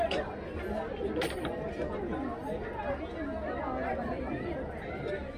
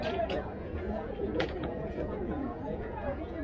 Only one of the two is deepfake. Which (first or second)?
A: second